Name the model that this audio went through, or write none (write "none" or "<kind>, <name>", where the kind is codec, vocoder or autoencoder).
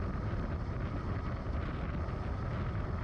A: none